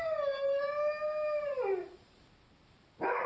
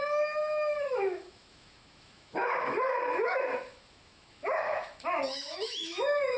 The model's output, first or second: second